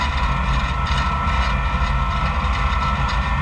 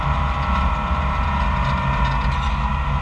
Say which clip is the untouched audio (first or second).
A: second